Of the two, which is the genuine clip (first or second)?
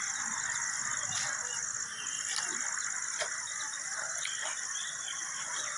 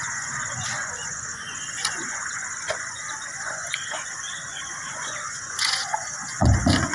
first